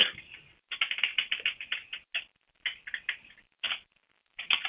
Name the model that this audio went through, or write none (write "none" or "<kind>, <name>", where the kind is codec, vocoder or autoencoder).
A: none